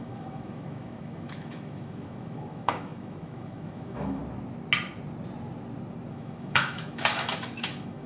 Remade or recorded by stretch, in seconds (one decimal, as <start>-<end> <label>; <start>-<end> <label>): 0.0-4.2 remade; 4.2-6.1 recorded; 6.1-8.1 remade